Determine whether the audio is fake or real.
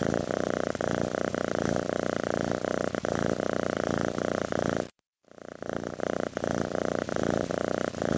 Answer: real